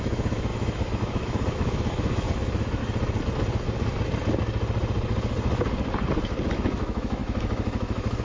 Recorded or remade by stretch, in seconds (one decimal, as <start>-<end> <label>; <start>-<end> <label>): 0.0-2.8 remade; 2.8-6.5 recorded; 6.5-8.2 remade